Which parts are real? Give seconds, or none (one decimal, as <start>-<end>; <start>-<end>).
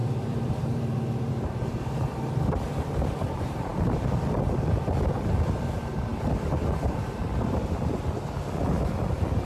1.3-2.7; 3.3-9.4